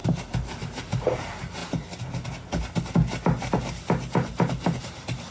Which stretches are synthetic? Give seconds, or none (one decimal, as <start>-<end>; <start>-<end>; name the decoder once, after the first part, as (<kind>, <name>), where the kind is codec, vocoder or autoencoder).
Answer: 0.5-1.6 (vocoder, BigVGAN v2); 4.8-5.3